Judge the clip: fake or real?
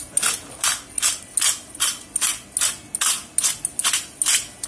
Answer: real